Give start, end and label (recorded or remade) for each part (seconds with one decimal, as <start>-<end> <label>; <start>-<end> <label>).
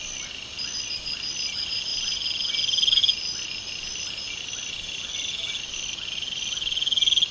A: 0.0-7.3 recorded